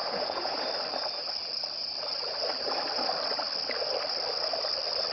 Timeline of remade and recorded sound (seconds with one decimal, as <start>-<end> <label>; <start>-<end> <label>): 0.0-0.7 remade; 0.7-5.1 recorded